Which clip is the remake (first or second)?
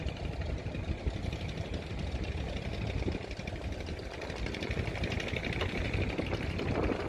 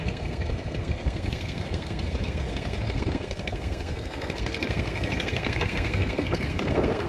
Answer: second